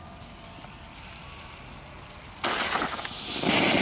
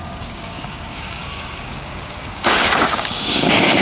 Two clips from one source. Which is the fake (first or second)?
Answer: second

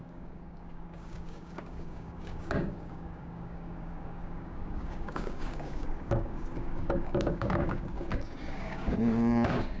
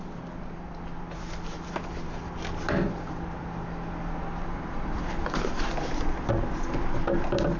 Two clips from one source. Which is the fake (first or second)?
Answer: first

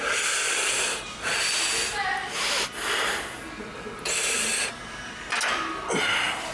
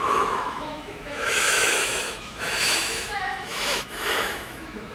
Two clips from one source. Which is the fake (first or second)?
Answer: second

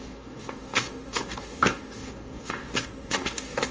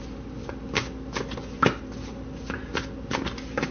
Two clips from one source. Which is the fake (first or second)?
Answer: first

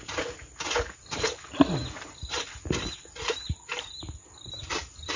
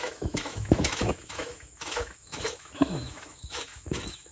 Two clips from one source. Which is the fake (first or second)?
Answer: second